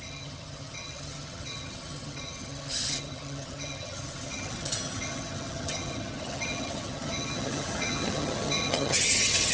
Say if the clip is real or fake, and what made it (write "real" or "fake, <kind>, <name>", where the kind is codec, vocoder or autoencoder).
fake, vocoder, HiFi-GAN